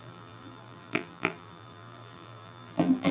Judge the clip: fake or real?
fake